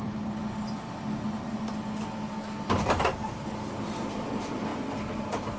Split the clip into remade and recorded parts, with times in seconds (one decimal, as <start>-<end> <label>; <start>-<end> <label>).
0.0-0.4 remade; 0.4-3.7 recorded; 3.7-4.7 remade; 4.7-5.6 recorded